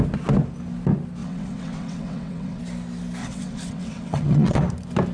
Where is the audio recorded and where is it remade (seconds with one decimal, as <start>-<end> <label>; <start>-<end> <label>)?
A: 0.0-1.2 recorded; 1.2-2.6 remade; 2.6-3.2 recorded; 3.2-4.6 remade; 4.6-5.1 recorded